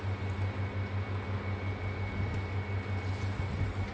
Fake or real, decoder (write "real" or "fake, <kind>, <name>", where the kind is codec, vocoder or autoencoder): real